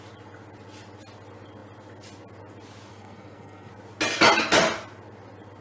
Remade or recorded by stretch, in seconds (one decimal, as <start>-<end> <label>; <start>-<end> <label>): 0.0-2.9 recorded; 2.9-3.7 remade; 3.7-5.6 recorded